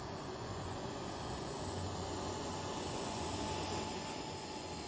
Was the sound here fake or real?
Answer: fake